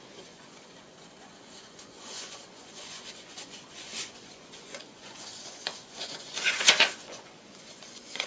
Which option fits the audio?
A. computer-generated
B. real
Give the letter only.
A